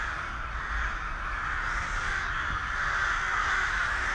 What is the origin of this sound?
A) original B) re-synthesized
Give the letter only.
A